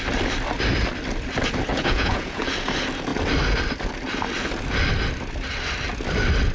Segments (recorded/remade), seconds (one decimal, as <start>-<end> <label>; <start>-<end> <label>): 0.0-1.7 recorded; 1.7-2.4 remade; 2.4-6.5 recorded